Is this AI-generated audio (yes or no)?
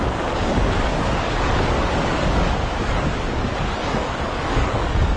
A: yes